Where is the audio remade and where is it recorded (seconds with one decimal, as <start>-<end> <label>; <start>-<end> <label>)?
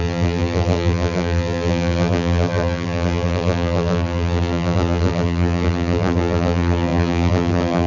0.0-7.9 remade